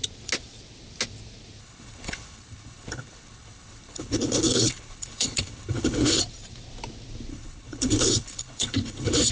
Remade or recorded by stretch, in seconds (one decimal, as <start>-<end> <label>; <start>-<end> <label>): 0.0-1.6 recorded; 1.6-6.2 remade; 6.2-7.3 recorded; 7.3-9.3 remade